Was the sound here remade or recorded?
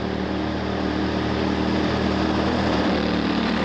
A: remade